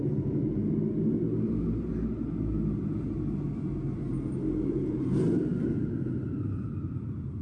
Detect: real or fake real